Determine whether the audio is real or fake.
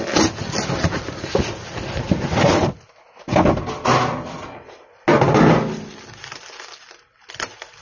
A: real